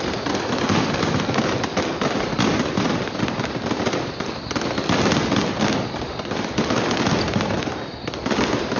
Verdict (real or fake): real